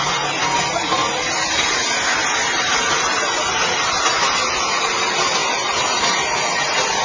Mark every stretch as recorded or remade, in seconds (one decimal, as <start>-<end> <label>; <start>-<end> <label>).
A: 0.0-7.0 recorded